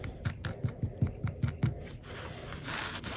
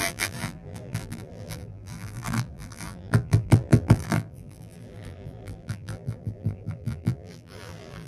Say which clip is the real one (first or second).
first